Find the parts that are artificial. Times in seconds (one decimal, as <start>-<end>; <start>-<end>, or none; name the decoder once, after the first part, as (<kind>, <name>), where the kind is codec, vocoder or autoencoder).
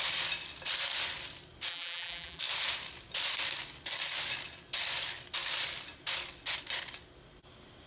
1.7-2.4 (vocoder, BigVGAN v2)